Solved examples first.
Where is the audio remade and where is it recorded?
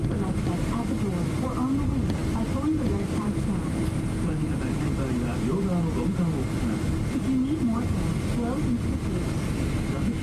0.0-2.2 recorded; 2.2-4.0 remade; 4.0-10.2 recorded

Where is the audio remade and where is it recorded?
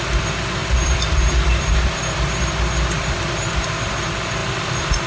0.0-0.6 recorded; 0.6-3.6 remade; 3.6-5.1 recorded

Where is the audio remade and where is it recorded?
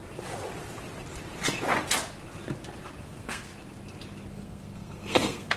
0.0-3.0 recorded; 3.0-3.5 remade; 3.5-4.3 recorded; 4.3-5.6 remade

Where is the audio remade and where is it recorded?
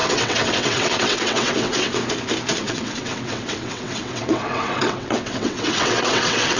0.0-2.0 remade; 2.0-2.6 recorded; 2.6-6.6 remade